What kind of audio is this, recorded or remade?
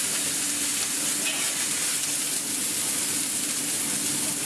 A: recorded